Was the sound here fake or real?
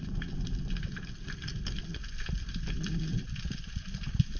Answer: real